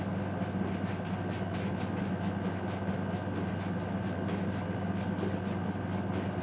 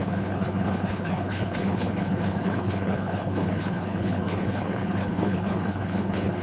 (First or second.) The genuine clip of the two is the first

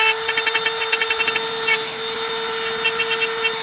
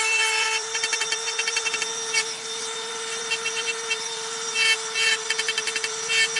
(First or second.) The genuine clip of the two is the first